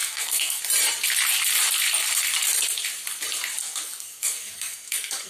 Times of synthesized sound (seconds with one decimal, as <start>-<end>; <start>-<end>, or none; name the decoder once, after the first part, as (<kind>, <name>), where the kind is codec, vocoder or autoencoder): 0.0-0.6 (codec, SNAC); 3.6-5.3